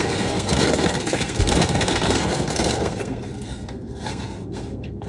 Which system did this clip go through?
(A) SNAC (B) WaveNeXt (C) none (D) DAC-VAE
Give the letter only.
A